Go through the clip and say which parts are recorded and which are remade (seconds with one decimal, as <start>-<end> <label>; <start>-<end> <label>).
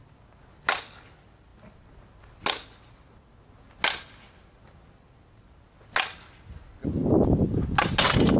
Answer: 0.0-8.4 recorded